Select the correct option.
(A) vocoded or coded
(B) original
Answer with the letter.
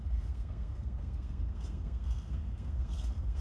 A